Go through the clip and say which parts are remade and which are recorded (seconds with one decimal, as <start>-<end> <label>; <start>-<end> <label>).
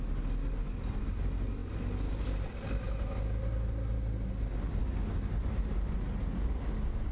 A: 0.0-7.1 recorded